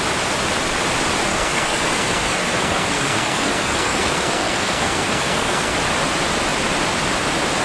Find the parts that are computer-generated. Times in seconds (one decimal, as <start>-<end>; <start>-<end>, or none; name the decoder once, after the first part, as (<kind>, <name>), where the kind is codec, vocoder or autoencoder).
1.3-5.8 (codec, SNAC)